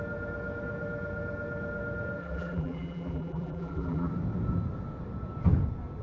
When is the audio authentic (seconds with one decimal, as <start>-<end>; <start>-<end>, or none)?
0.0-2.2; 4.1-6.0